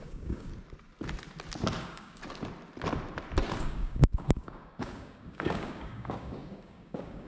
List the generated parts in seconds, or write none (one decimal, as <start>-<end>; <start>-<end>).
0.0-0.5; 1.8-2.2; 3.6-7.3